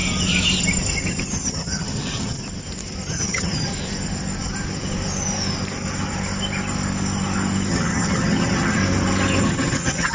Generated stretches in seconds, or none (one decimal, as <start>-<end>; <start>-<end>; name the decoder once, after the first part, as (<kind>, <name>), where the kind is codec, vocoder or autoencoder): 1.5-2.4 (vocoder, HiFi-GAN); 3.1-3.7; 7.7-8.8; 9.4-10.1